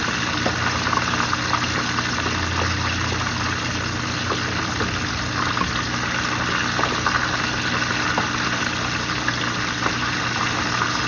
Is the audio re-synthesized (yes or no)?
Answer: no